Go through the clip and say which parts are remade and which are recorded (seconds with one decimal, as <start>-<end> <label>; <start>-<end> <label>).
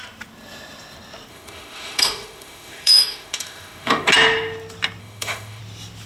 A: 0.0-1.3 recorded; 1.3-4.1 remade; 4.1-5.0 recorded; 5.0-5.6 remade; 5.6-6.1 recorded